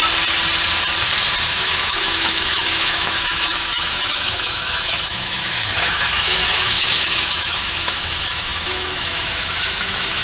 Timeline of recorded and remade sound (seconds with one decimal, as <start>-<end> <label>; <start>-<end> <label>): 0.0-1.5 recorded; 1.5-10.2 remade